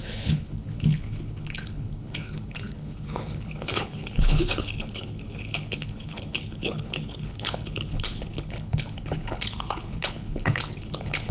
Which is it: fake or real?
fake